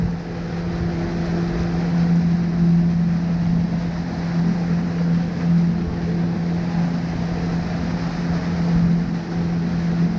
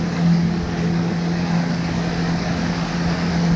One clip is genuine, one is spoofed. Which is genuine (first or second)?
first